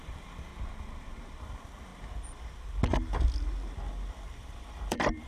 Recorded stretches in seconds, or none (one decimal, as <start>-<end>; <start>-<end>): 0.5-1.4; 1.9-4.1